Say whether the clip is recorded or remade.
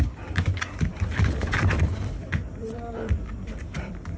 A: remade